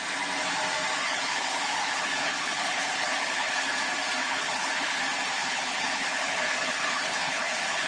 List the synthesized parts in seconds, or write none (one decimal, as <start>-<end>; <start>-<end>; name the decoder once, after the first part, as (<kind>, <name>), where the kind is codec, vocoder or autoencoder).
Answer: 1.0-3.8 (codec, HILCodec); 4.2-5.0; 5.4-7.9